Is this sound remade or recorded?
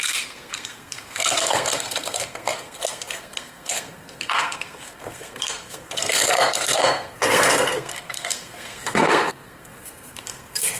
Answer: remade